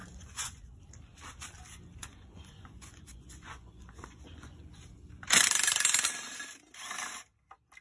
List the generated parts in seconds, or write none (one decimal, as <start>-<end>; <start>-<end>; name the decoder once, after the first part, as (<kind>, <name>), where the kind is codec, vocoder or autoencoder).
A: 0.0-0.6 (vocoder, Vocos); 2.0-4.7